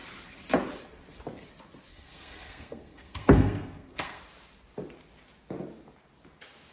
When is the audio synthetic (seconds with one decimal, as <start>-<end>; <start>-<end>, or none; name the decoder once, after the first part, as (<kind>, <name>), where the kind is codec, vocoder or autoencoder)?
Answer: 1.9-4.2 (codec, SNAC)